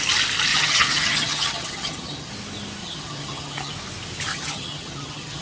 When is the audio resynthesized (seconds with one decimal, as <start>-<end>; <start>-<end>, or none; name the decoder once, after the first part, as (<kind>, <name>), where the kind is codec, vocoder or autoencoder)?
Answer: 0.5-2.3 (vocoder, HiFi-GAN); 2.8-3.7; 4.3-5.4